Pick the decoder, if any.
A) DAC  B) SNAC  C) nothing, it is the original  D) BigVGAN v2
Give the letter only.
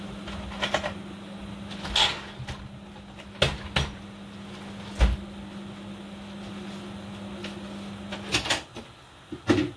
C